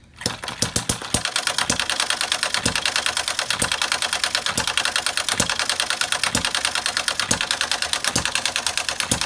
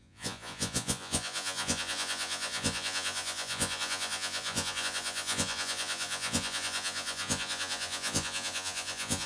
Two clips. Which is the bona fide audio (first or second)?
first